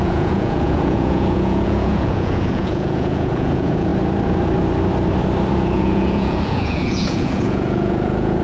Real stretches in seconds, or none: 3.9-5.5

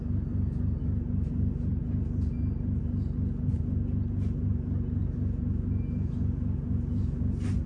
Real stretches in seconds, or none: 0.0-7.7

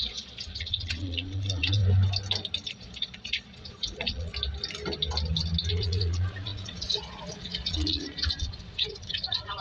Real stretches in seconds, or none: 1.8-2.7; 4.3-5.7

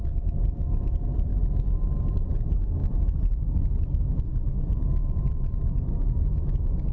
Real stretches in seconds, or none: 1.3-2.1; 2.8-3.3; 4.4-5.1

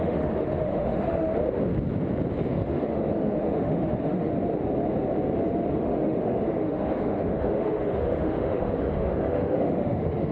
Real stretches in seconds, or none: 1.3-2.4; 4.3-5.7